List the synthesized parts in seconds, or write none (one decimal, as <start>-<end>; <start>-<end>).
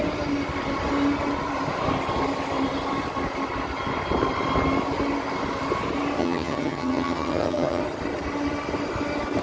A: 6.2-7.8